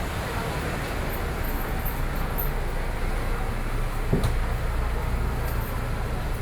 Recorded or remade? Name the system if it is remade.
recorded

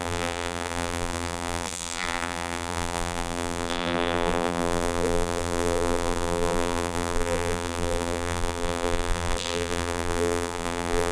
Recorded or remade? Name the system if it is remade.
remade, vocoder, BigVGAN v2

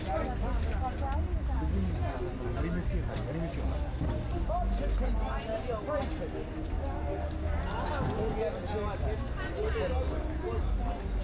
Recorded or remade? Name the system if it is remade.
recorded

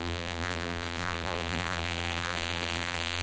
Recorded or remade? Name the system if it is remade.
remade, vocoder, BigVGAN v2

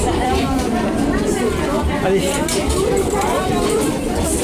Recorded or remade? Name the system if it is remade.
remade, vocoder, BigVGAN v2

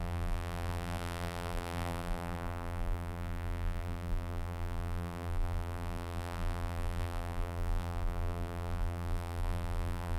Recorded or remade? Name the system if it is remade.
remade, vocoder, BigVGAN v2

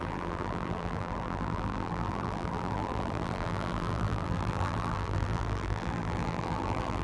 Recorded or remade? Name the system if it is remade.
remade, vocoder, BigVGAN v2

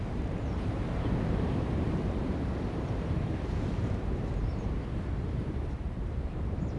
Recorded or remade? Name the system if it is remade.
remade, vocoder, BigVGAN v2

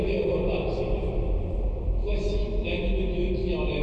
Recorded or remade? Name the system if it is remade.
recorded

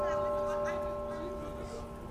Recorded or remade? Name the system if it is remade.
recorded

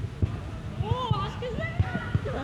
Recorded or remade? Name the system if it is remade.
recorded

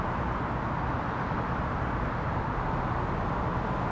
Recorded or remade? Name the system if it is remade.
recorded